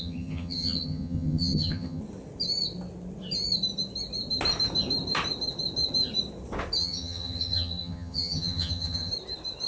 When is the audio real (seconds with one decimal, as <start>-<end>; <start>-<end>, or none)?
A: 2.0-6.8; 9.1-9.7